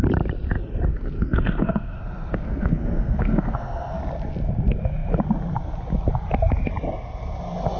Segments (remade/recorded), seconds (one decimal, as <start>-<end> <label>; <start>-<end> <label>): 0.0-0.9 recorded; 0.9-4.0 remade; 4.0-7.8 recorded